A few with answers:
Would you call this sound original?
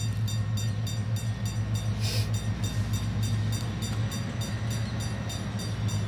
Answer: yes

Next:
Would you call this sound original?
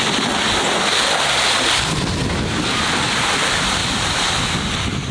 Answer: yes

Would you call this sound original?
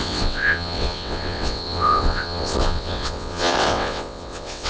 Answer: no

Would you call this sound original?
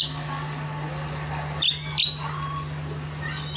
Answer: yes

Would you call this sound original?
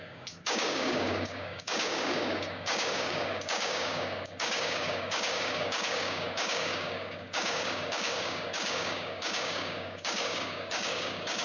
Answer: no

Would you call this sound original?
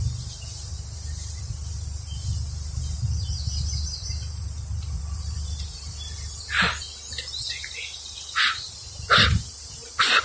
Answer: yes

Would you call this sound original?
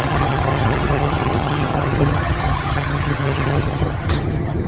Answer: no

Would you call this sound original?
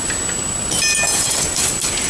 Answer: yes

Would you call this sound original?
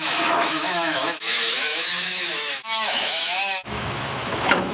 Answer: no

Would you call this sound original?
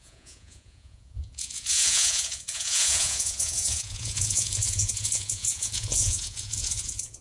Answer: no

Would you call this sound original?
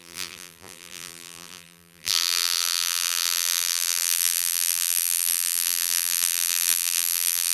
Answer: no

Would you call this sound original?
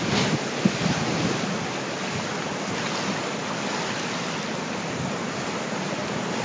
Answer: yes